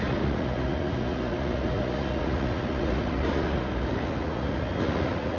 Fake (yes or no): yes